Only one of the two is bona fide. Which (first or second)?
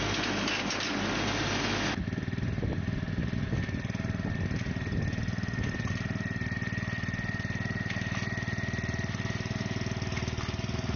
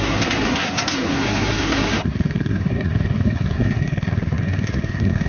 first